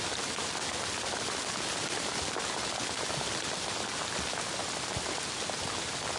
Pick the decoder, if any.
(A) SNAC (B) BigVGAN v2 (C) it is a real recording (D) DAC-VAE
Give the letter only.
C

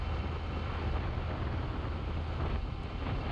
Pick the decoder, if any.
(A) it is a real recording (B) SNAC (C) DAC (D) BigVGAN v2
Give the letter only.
A